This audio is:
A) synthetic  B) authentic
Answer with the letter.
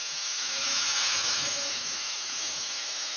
A